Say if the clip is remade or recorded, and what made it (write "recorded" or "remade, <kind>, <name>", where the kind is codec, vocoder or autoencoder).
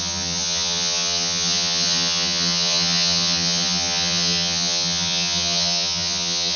remade, vocoder, HiFi-GAN